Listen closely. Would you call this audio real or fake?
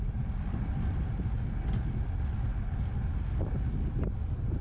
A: real